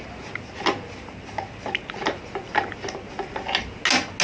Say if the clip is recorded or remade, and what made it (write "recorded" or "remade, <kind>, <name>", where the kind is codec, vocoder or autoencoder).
recorded